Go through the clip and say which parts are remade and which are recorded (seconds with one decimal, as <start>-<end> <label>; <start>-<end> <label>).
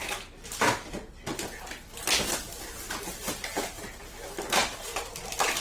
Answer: 0.0-5.6 recorded